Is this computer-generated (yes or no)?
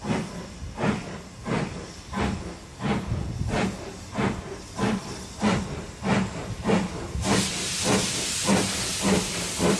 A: no